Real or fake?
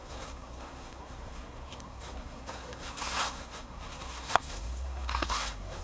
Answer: fake